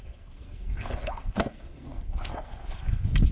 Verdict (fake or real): fake